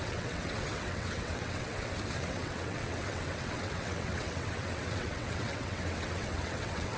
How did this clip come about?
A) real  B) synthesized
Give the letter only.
B